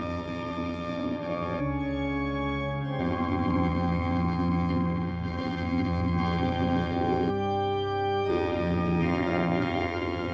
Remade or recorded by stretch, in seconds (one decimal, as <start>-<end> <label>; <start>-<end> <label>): 0.0-1.6 remade; 1.6-3.0 recorded; 3.0-7.3 remade; 7.3-8.3 recorded; 8.3-10.3 remade